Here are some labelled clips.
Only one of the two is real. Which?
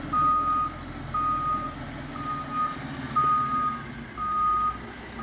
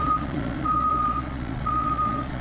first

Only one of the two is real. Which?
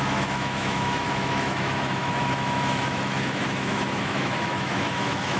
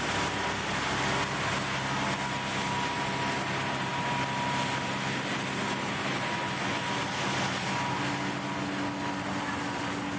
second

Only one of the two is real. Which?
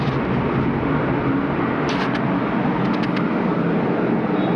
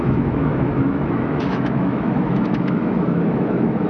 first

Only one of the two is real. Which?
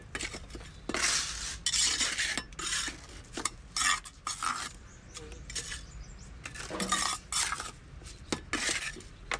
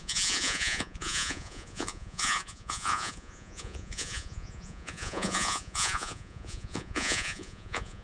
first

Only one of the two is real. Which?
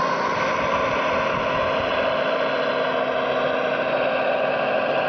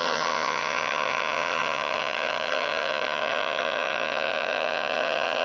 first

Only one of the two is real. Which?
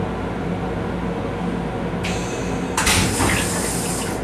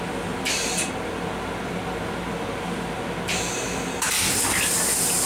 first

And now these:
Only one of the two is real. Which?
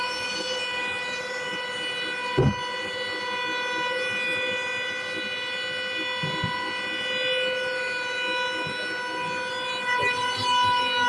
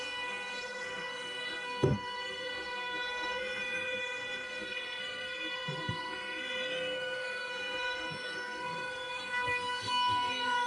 first